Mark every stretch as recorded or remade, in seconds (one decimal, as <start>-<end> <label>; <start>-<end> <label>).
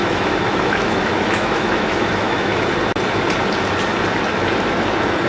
0.0-2.6 remade; 2.6-5.3 recorded